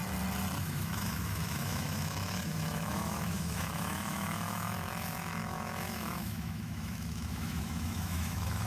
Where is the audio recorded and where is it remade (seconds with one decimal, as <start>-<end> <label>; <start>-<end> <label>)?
0.0-0.6 recorded; 0.6-8.7 remade